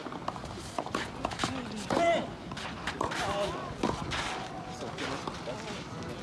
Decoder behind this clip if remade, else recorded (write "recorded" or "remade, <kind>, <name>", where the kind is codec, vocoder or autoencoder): recorded